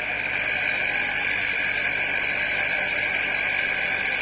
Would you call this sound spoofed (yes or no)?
no